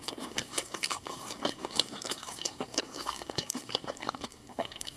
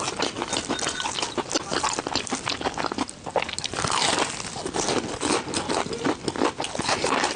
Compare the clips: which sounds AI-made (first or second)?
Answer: first